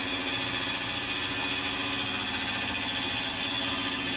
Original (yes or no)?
yes